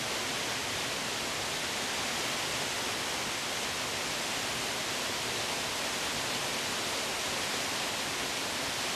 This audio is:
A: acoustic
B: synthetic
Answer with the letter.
A